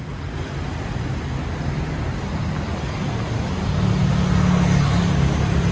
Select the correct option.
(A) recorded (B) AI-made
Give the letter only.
A